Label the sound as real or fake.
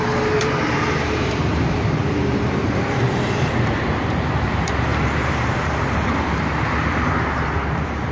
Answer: fake